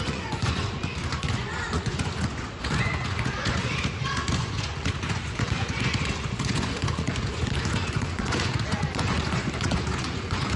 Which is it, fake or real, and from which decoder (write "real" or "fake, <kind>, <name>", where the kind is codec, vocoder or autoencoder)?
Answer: fake, vocoder, Vocos